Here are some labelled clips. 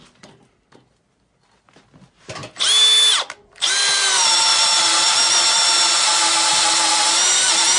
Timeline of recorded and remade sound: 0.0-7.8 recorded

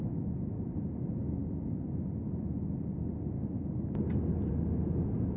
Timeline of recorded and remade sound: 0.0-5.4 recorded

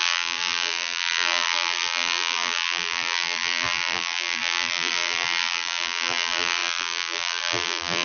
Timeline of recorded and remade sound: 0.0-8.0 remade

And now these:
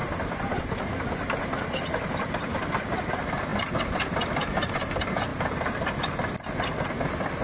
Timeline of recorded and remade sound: 0.0-7.4 recorded

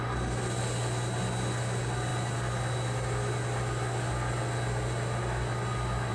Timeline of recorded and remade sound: 0.0-6.1 recorded